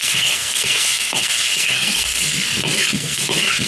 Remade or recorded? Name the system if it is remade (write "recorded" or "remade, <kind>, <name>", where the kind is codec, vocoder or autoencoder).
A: remade, codec, SNAC